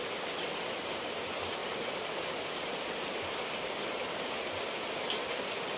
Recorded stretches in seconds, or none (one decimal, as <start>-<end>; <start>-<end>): 0.0-5.8